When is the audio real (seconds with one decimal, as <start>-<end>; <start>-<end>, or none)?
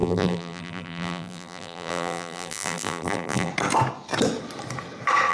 3.5-5.3